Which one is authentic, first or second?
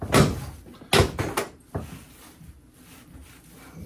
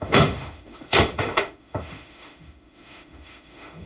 first